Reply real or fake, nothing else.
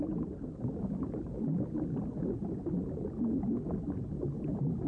real